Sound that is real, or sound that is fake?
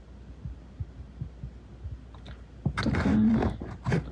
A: real